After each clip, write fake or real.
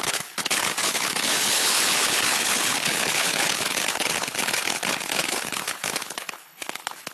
fake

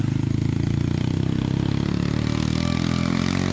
real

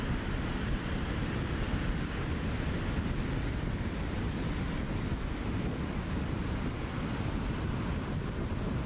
real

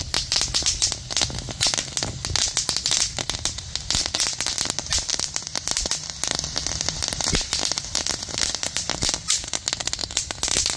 real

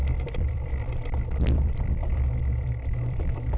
fake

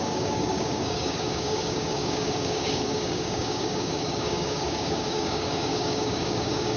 fake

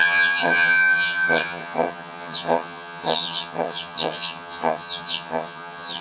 fake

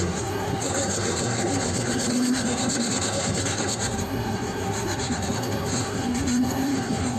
fake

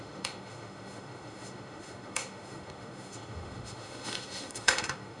fake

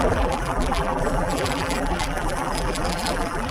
fake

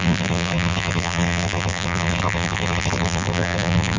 fake